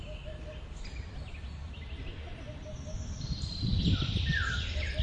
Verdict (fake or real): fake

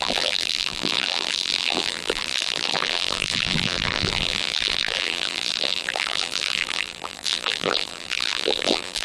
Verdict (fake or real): fake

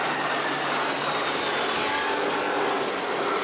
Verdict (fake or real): real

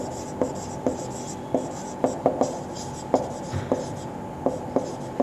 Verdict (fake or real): real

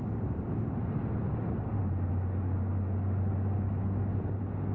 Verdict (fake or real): real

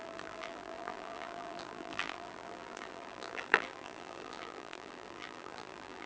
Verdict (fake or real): fake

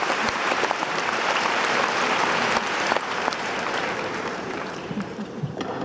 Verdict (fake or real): fake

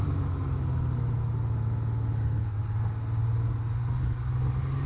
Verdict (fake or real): real